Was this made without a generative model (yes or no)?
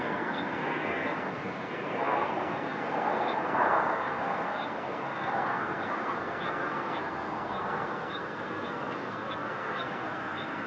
no